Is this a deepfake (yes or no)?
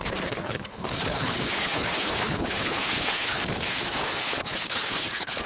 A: yes